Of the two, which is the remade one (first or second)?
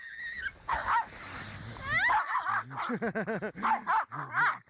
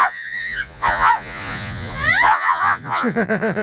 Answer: second